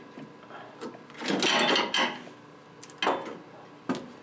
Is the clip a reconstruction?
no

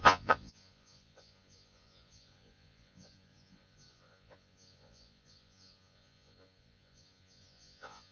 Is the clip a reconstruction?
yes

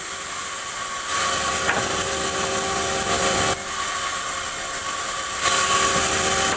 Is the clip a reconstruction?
no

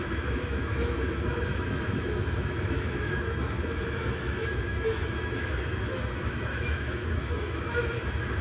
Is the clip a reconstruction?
yes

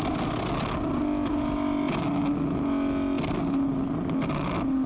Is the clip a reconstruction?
no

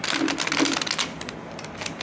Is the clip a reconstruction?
no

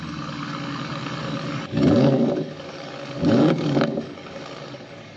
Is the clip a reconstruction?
yes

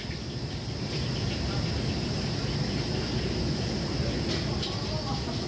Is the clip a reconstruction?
no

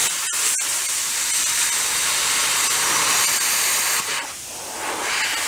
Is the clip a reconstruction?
no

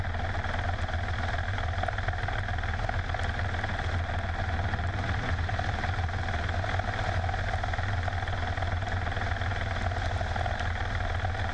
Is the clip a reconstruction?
no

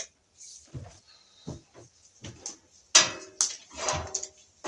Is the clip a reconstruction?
no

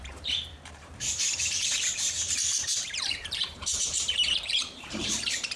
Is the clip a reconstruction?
yes